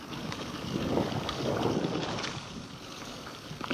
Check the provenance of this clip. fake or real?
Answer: fake